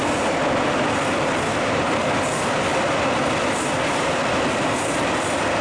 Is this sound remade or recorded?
recorded